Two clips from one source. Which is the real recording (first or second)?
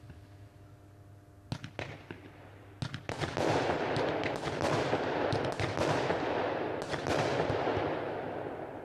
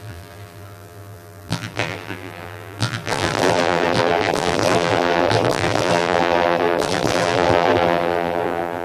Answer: first